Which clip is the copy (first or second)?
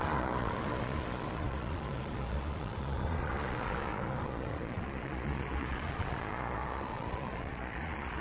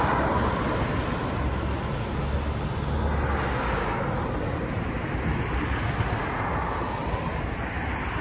first